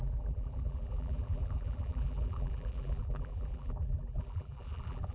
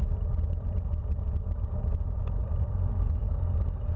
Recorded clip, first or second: second